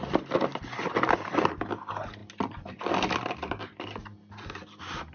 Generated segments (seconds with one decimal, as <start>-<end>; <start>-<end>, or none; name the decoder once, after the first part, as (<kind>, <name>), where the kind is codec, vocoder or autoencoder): none